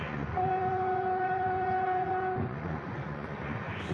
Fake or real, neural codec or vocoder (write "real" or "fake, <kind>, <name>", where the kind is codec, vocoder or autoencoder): fake, vocoder, Vocos